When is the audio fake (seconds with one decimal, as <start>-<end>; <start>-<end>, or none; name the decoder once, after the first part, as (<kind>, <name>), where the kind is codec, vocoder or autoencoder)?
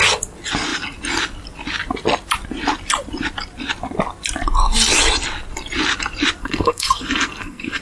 6.4-7.8 (codec, SNAC)